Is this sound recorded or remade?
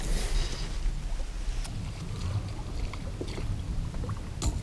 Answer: recorded